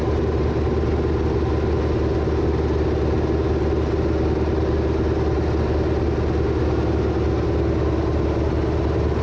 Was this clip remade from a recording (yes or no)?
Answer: no